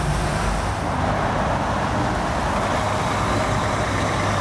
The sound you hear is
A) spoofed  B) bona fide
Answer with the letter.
B